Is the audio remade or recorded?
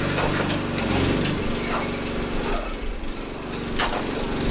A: recorded